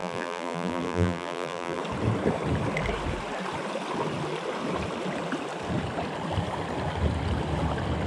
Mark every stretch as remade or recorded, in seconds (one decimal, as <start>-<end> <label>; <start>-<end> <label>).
0.0-1.8 remade; 1.8-8.1 recorded